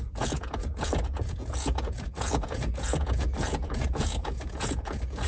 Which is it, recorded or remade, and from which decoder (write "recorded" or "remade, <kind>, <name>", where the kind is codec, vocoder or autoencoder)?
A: remade, vocoder, Vocos